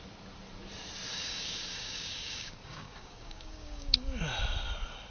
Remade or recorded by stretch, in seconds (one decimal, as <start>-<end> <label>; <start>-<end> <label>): 0.0-1.1 recorded; 1.1-4.2 remade; 4.2-5.1 recorded